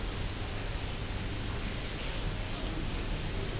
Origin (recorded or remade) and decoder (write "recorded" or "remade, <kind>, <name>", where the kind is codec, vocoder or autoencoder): recorded